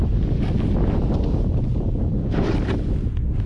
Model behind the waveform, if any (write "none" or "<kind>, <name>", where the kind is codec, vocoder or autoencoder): none